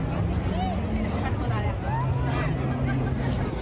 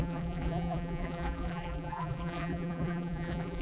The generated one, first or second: second